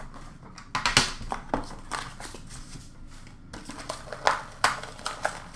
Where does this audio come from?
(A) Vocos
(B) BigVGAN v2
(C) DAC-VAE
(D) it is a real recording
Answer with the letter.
D